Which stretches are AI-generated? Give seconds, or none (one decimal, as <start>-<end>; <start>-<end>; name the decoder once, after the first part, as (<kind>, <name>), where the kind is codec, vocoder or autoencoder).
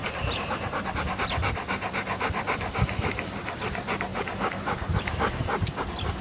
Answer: 0.0-0.9 (vocoder, BigVGAN v2); 4.1-5.7